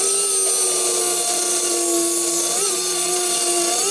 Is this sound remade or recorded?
recorded